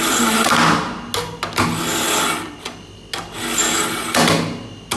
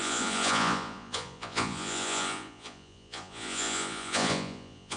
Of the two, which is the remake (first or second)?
second